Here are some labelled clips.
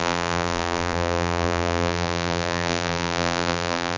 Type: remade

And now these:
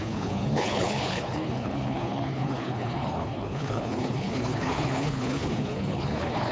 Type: remade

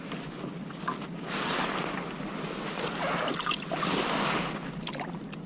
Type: recorded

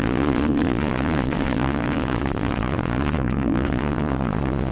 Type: remade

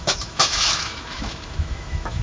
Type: remade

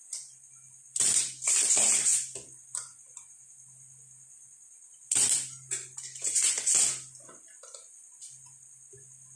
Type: recorded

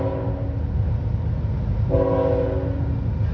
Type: recorded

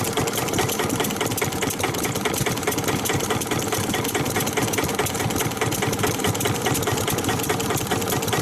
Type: remade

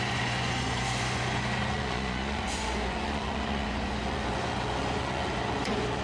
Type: remade